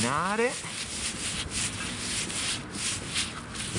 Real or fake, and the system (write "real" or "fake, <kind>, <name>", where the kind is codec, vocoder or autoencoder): real